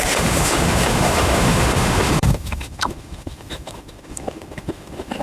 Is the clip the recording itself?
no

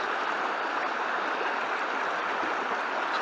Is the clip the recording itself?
yes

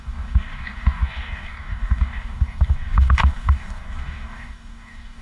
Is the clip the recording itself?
no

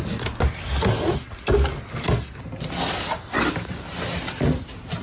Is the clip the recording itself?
yes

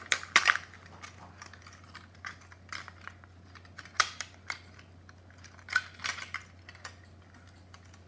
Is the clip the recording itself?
yes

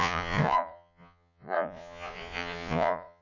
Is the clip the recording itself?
no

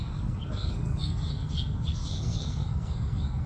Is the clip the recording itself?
no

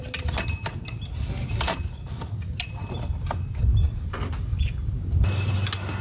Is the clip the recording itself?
yes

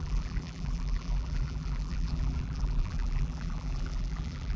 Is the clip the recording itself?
no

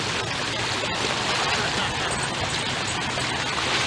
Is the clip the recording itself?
yes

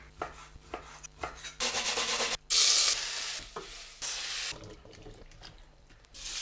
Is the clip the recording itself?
yes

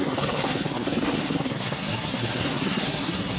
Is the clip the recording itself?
no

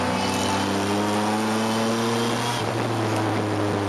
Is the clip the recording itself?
yes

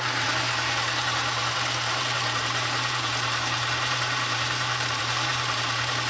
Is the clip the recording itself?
no